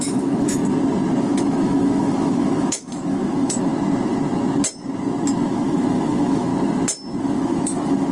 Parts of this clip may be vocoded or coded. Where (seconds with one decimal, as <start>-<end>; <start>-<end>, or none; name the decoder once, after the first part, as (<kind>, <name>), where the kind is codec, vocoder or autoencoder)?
0.0-0.6 (autoencoder, DAC-VAE); 1.2-3.7; 5.5-6.5; 7.2-8.1